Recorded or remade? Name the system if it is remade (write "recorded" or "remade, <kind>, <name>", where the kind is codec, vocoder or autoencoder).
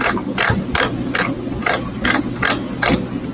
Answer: recorded